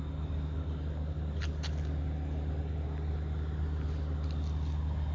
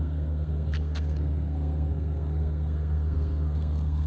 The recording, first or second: first